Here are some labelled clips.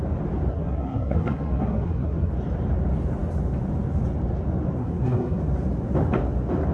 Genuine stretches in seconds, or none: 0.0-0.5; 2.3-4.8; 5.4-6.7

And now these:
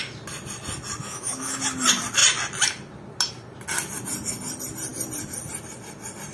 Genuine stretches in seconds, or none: 0.0-1.0; 1.6-6.3